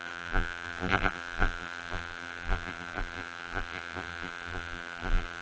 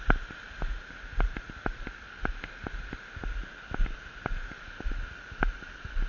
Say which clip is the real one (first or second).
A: second